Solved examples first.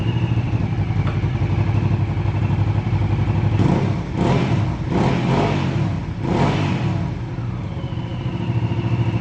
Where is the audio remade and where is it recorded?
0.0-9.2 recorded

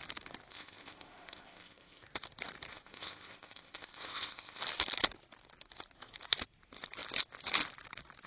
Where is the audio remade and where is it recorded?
0.0-0.5 recorded; 0.5-2.0 remade; 2.0-2.7 recorded; 2.7-4.6 remade; 4.6-8.3 recorded

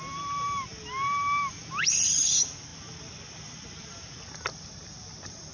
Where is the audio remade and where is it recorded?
0.0-5.5 recorded

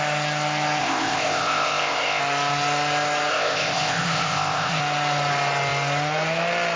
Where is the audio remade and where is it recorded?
0.0-0.8 recorded; 0.8-2.2 remade; 2.2-3.3 recorded; 3.3-4.8 remade; 4.8-6.8 recorded

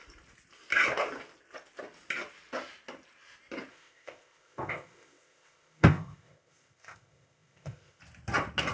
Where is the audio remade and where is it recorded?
0.0-3.7 recorded; 3.7-8.0 remade; 8.0-8.7 recorded

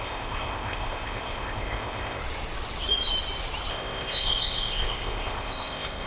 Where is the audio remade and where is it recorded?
0.0-2.2 remade; 2.2-3.7 recorded; 3.7-6.1 remade

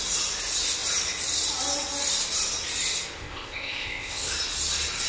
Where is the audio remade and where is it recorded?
0.0-3.2 recorded; 3.2-4.3 remade; 4.3-5.1 recorded